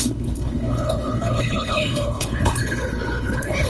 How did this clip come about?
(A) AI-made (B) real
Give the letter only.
A